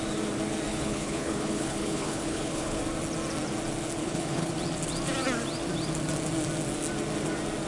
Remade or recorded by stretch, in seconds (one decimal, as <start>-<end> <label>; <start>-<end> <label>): 0.0-0.7 recorded; 0.7-2.8 remade; 2.8-4.0 recorded; 4.0-4.5 remade; 4.5-7.7 recorded

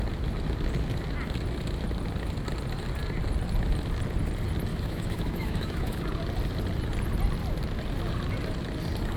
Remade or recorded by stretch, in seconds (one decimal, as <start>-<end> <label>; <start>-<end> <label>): 0.0-4.7 recorded; 4.7-6.0 remade; 6.0-9.2 recorded

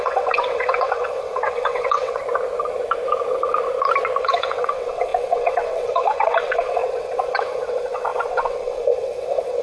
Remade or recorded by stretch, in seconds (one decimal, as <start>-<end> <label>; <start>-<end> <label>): 0.0-2.2 remade; 2.2-4.2 recorded; 4.2-9.6 remade

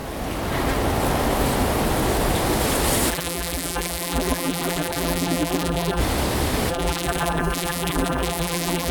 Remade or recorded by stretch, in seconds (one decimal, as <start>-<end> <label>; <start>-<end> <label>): 0.0-3.1 recorded; 3.1-6.0 remade; 6.0-6.7 recorded; 6.7-8.9 remade

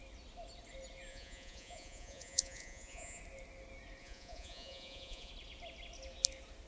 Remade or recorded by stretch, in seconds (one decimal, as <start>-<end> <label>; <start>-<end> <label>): 0.0-1.1 recorded; 1.1-3.2 remade; 3.2-4.0 recorded; 4.0-5.3 remade; 5.3-6.7 recorded